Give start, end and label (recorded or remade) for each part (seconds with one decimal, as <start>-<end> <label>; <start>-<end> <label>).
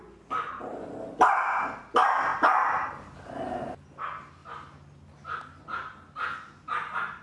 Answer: 0.0-7.2 recorded